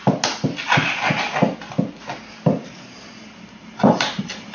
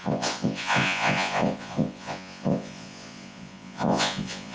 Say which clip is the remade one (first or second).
second